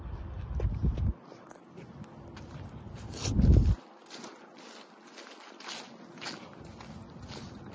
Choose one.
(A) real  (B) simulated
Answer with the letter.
A